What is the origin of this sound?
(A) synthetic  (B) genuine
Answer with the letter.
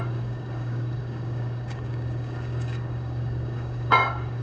A